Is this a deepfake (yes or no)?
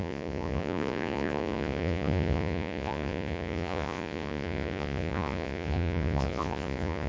yes